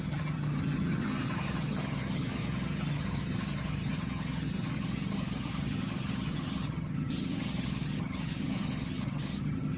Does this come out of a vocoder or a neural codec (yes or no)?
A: yes